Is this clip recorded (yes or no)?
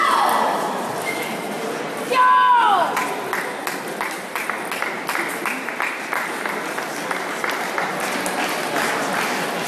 yes